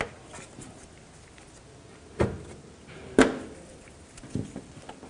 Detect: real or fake real